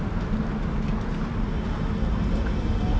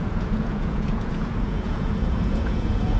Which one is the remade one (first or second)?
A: second